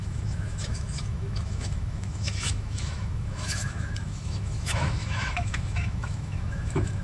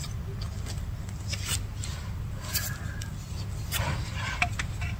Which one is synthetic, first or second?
first